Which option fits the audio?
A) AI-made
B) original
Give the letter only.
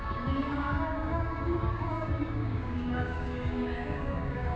A